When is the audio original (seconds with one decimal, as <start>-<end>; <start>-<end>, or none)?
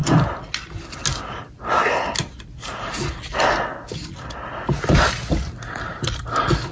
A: 0.0-6.7